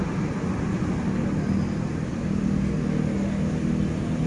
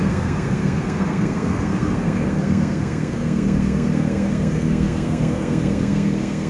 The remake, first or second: second